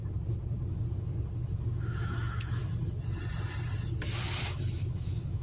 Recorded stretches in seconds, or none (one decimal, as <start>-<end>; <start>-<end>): 0.0-1.8; 2.6-4.4